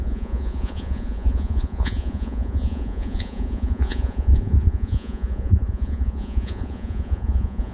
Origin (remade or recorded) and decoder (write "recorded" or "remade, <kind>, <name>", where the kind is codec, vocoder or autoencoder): remade, vocoder, Vocos